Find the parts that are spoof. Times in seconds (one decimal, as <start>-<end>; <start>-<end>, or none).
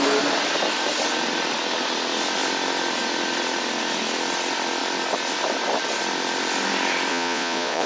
7.1-7.9